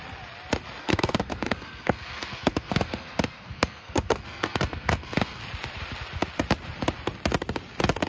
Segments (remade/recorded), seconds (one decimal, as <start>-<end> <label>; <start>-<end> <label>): 0.0-0.8 recorded; 0.8-5.4 remade; 5.4-8.1 recorded